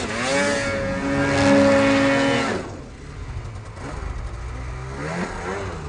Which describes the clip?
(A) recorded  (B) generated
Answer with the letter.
A